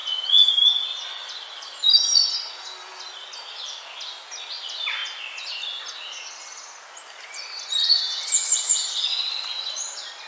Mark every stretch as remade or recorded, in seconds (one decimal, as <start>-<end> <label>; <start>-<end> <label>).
0.0-0.5 remade; 0.5-10.3 recorded